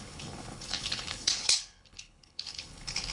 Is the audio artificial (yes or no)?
yes